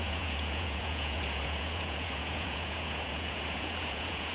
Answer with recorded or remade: remade